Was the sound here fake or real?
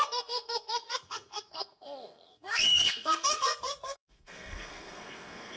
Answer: fake